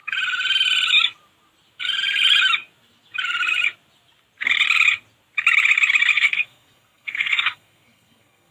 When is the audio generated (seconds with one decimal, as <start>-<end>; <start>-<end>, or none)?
6.1-8.5